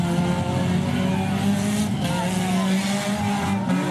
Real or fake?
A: real